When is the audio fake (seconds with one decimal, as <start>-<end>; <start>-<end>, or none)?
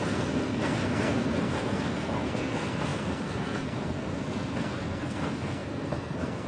0.0-6.5